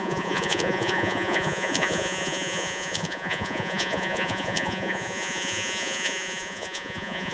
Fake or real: fake